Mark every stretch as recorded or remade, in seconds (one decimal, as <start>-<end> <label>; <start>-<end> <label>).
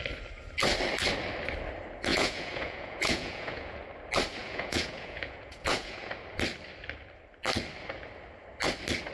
0.0-2.1 recorded; 2.1-3.8 remade; 3.8-4.4 recorded; 4.4-6.1 remade; 6.1-9.1 recorded